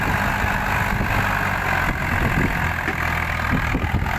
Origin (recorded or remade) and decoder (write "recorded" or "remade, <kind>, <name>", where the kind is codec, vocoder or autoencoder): recorded